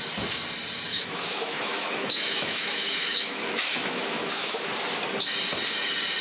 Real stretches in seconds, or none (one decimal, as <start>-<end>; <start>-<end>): 0.0-0.9; 4.6-6.2